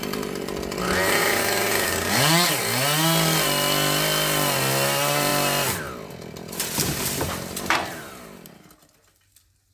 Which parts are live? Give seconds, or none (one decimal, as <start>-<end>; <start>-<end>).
0.0-1.2; 2.5-9.7